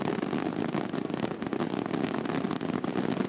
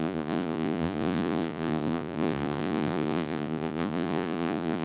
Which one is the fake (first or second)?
second